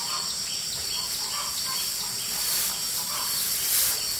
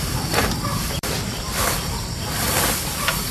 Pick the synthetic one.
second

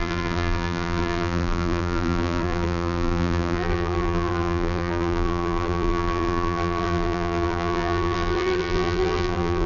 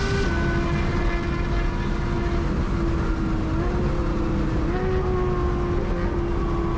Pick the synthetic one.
first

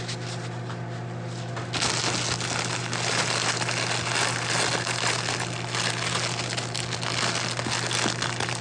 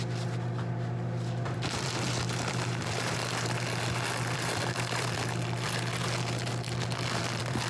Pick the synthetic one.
second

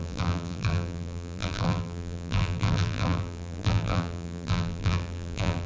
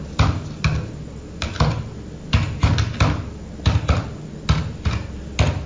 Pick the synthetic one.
first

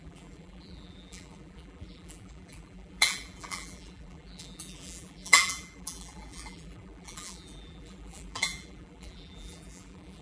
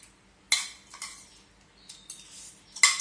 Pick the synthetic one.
first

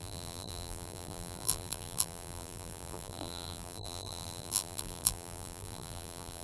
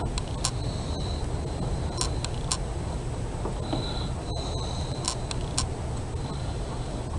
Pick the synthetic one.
first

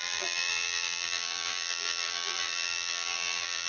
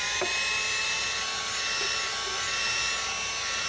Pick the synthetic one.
first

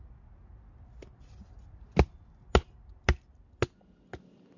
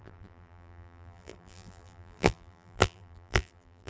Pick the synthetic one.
second